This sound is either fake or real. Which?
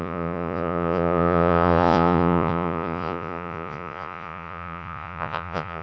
fake